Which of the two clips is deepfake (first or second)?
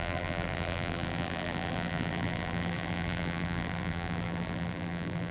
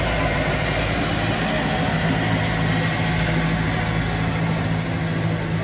first